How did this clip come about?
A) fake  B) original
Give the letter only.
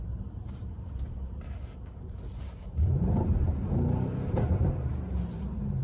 A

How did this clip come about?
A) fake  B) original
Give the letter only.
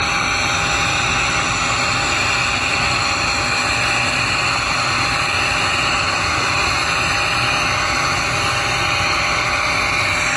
B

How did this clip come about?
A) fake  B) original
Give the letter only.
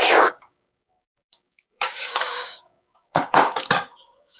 A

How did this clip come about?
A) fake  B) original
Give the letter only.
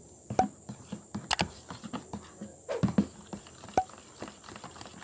B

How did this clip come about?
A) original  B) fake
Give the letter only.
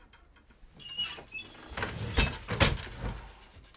A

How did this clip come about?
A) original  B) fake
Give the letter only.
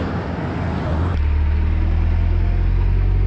A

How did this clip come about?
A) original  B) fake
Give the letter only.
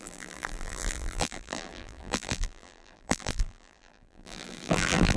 B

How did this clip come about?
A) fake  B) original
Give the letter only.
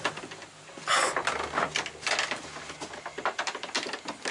B